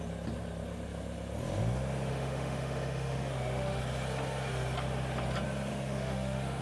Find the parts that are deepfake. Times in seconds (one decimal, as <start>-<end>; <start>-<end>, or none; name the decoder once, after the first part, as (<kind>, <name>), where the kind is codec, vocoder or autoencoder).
2.1-3.8 (autoencoder, DAC-VAE); 5.7-6.6

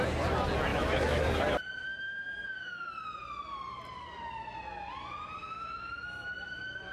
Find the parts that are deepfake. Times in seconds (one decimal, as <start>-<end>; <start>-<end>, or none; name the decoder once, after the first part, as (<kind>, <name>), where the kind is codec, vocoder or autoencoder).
0.7-1.4 (autoencoder, DAC-VAE); 1.9-2.9; 5.4-6.3

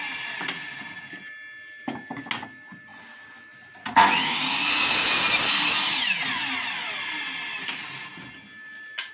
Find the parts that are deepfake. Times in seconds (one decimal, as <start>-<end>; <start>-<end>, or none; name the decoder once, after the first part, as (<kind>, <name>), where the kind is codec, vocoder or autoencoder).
none